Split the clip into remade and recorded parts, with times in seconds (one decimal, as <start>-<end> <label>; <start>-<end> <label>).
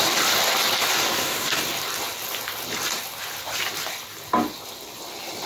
0.0-0.9 recorded; 0.9-1.6 remade; 1.6-5.5 recorded